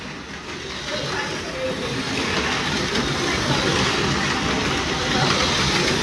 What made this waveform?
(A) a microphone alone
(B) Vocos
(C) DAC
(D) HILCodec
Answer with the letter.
A